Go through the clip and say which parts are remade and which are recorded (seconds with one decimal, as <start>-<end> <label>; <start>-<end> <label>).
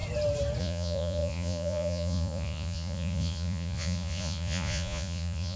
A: 0.0-0.6 recorded; 0.6-5.6 remade